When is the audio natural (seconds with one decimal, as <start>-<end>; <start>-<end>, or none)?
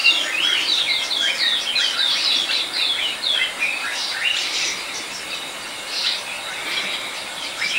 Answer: 0.0-1.8; 6.0-6.5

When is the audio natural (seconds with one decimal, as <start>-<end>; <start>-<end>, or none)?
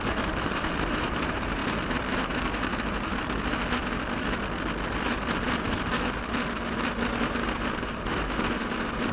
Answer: 1.6-2.1; 3.1-7.1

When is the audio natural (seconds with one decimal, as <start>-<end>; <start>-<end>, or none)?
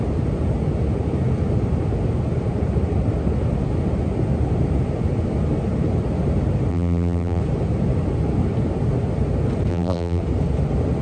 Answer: 0.0-6.7; 7.4-9.7; 10.2-11.0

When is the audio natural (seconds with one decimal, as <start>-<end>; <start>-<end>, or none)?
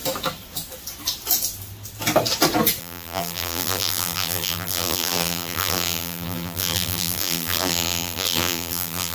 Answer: 0.0-2.8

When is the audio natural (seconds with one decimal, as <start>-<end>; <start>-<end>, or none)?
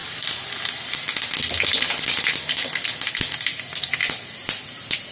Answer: 0.0-5.1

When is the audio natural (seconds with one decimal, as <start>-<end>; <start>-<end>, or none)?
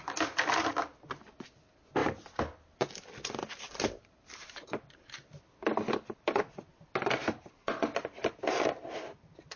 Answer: 0.0-3.4; 5.4-7.2; 9.0-9.6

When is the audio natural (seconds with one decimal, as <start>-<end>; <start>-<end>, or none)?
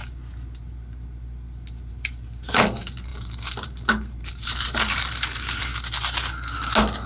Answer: 0.0-1.9; 5.7-7.1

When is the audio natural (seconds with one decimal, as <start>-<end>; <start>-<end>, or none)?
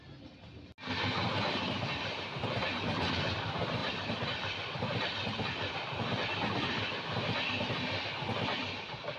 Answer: 0.0-3.8; 7.7-9.2